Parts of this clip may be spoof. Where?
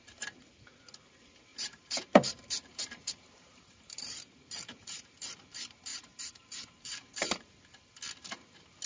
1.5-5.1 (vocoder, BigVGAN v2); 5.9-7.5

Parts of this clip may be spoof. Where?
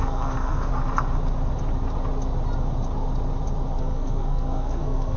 0.0-0.7 (codec, SNAC); 3.8-5.2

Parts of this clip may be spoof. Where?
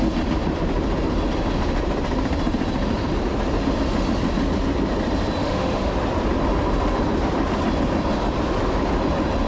5.4-5.9 (autoencoder, DAC-VAE)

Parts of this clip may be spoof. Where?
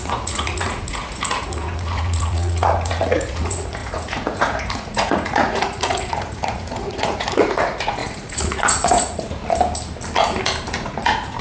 0.0-9.4 (vocoder, Vocos); 10.7-11.4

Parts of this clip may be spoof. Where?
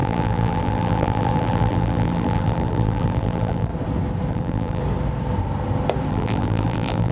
0.0-3.7 (vocoder, BigVGAN v2); 4.3-4.8; 6.1-7.1